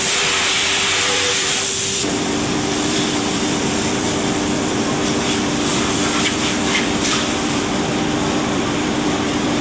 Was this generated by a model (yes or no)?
yes